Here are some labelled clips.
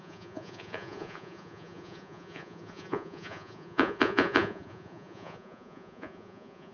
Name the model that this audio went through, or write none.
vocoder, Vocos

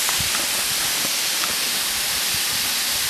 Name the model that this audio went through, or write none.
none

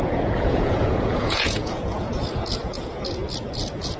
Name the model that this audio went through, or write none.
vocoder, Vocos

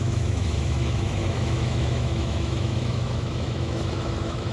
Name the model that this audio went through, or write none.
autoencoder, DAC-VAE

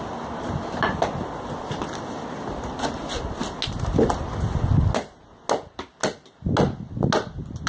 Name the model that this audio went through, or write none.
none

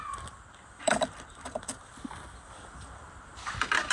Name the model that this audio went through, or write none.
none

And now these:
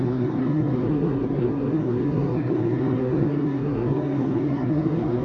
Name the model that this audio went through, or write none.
codec, SNAC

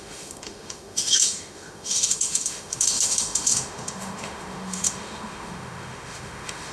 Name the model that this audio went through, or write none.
autoencoder, DAC-VAE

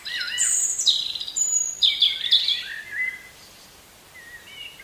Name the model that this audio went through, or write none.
vocoder, BigVGAN v2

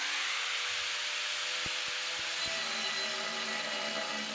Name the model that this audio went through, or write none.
none